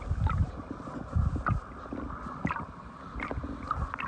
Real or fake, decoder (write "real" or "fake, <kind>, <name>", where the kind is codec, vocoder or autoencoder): real